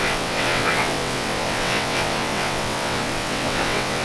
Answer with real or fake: fake